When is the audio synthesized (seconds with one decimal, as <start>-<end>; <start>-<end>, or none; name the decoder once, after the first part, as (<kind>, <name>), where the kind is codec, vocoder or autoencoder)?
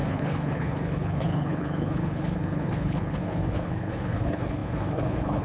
0.0-5.4 (codec, HILCodec)